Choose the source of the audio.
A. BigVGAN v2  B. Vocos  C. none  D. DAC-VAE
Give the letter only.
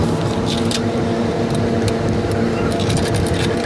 C